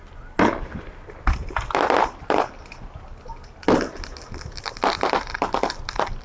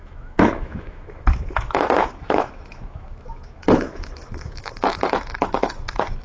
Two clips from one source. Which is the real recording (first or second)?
first